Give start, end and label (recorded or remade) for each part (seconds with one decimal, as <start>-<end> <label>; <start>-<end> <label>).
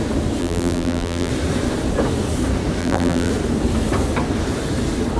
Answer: 0.0-0.4 recorded; 0.4-1.3 remade; 1.3-2.8 recorded; 2.8-3.3 remade; 3.3-5.2 recorded